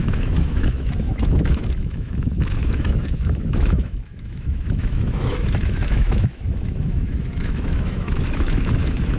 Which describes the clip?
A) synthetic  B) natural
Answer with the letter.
A